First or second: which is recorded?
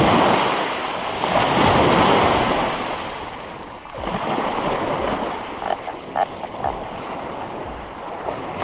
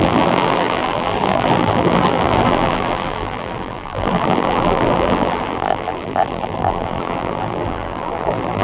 first